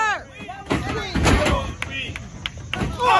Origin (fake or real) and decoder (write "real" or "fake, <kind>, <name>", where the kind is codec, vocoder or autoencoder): real